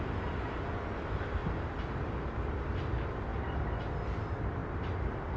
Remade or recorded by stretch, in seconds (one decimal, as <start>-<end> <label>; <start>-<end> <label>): 0.0-3.3 recorded; 3.3-3.8 remade; 3.8-4.6 recorded; 4.6-5.4 remade